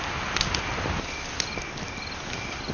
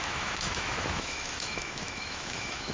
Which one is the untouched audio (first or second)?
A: first